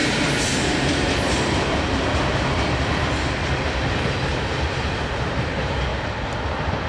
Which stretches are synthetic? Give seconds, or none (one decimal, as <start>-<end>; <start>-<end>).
0.0-1.8; 4.3-4.9; 5.9-6.4